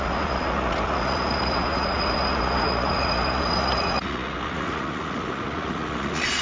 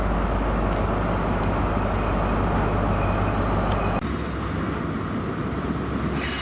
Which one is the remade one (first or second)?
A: first